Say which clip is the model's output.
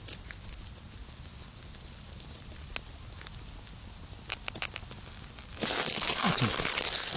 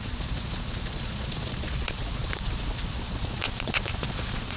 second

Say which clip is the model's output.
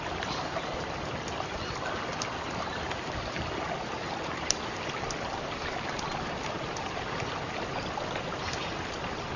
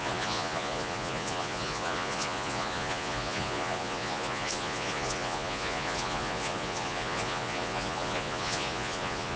second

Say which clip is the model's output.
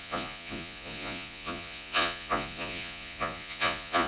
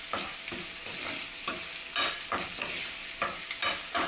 first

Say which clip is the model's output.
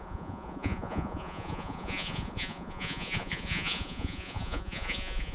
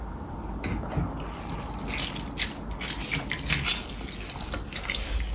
first